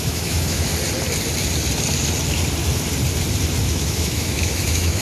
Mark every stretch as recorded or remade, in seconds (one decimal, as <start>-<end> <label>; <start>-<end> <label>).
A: 0.0-0.7 remade; 0.7-3.7 recorded; 3.7-5.0 remade